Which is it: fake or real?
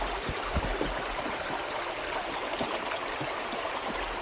fake